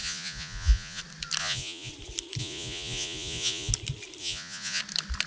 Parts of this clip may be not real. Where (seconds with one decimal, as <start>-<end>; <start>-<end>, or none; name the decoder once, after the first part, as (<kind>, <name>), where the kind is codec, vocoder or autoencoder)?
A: 0.0-1.0 (vocoder, Vocos); 1.4-1.9; 2.4-3.7; 4.2-4.8